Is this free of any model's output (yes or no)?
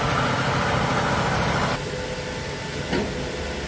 yes